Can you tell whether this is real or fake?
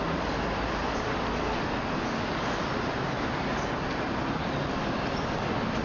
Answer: real